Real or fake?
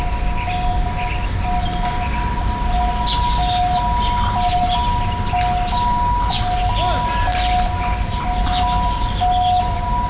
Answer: real